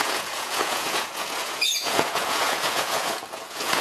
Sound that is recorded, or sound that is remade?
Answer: remade